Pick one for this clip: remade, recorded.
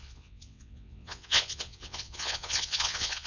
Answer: remade